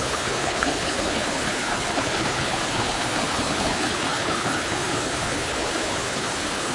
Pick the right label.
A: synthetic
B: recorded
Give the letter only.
A